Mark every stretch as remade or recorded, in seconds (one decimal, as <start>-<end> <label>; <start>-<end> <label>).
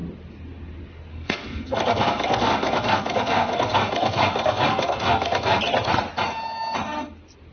0.0-1.1 recorded; 1.1-5.6 remade; 5.6-7.5 recorded